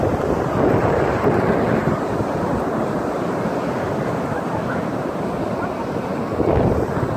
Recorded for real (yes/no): yes